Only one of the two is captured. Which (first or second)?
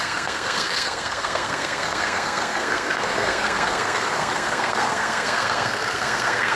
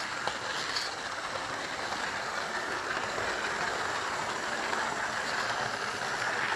second